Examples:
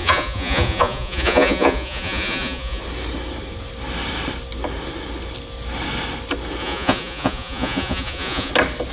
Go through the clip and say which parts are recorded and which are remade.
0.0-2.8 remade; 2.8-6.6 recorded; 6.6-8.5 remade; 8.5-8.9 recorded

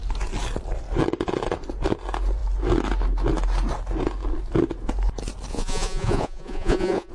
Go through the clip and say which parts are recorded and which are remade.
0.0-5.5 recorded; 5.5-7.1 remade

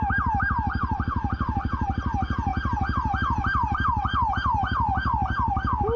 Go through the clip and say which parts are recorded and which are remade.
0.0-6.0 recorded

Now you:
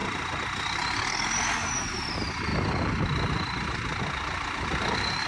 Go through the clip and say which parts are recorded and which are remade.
0.0-5.3 recorded

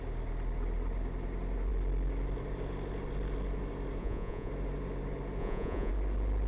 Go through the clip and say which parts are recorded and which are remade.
0.0-4.0 recorded; 4.0-4.5 remade; 4.5-5.4 recorded; 5.4-5.9 remade; 5.9-6.5 recorded

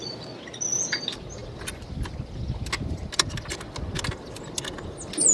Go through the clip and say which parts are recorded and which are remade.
0.0-5.3 recorded